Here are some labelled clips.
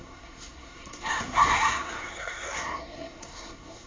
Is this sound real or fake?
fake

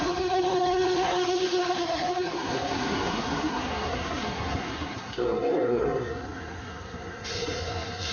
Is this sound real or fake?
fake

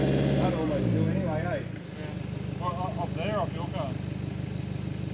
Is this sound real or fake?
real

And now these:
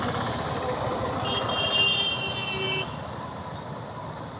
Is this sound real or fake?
real